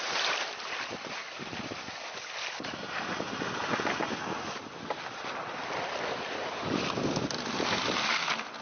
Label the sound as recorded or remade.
recorded